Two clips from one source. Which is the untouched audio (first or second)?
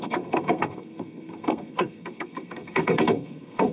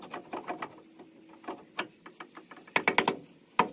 second